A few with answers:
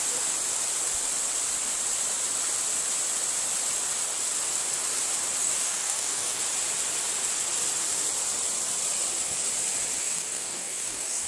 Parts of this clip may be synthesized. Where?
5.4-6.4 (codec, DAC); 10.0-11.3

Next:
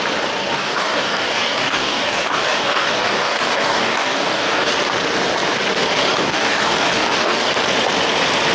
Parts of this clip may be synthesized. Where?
0.5-4.7 (codec, DAC); 6.2-7.5

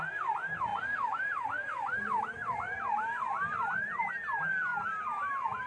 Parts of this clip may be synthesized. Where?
0.7-4.1 (vocoder, BigVGAN v2)

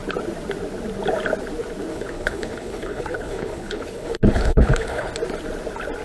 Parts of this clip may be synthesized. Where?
1.9-5.1 (codec, HILCodec)

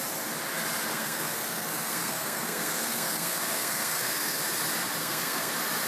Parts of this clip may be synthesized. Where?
0.9-4.4 (codec, SNAC); 5.0-5.5